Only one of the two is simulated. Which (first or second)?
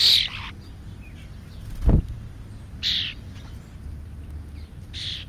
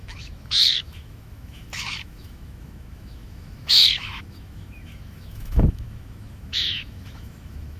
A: second